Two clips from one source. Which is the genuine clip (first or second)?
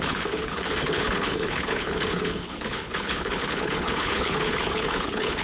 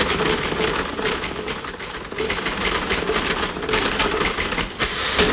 second